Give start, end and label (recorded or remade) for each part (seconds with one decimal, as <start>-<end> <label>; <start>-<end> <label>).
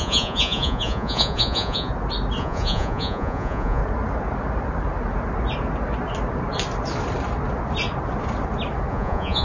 0.0-1.9 remade; 1.9-2.4 recorded; 2.4-3.8 remade; 3.8-8.9 recorded; 8.9-9.4 remade